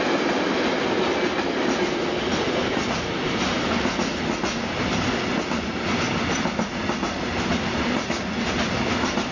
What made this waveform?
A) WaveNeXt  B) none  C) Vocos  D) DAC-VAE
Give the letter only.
B